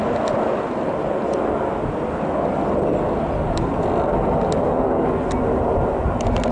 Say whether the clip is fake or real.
real